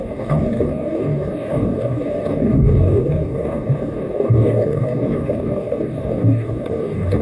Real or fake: fake